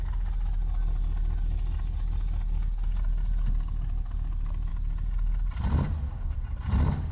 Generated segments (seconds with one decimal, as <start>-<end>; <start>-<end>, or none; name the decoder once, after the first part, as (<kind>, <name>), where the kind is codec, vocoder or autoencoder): none